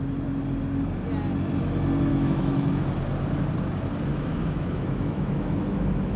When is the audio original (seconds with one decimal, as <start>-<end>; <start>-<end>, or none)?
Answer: 0.0-2.1; 2.7-4.1